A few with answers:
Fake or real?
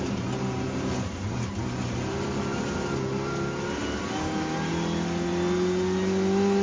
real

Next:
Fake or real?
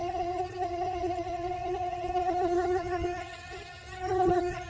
fake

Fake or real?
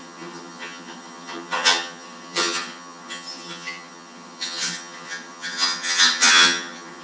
fake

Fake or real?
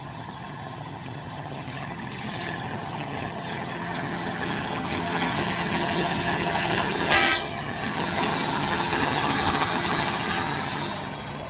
fake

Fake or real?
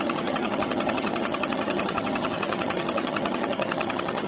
fake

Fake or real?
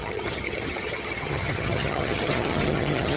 fake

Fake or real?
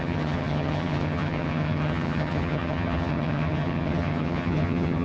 fake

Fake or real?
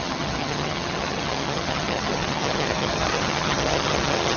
fake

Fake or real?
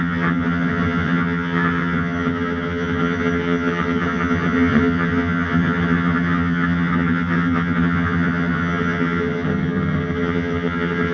fake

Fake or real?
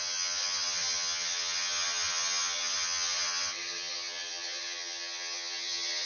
fake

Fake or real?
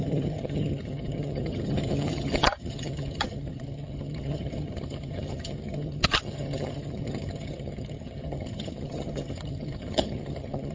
fake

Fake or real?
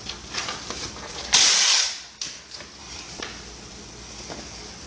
real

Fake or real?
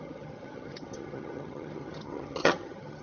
fake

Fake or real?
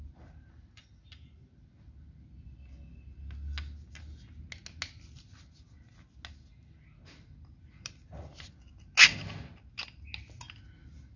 real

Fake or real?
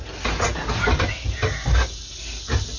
real